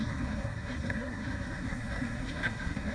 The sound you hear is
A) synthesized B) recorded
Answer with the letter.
A